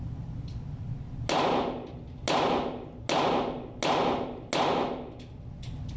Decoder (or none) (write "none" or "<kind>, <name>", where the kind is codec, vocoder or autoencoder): none